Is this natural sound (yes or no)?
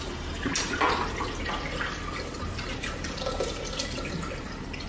yes